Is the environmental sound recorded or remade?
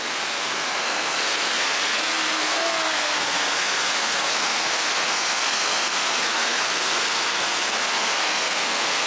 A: remade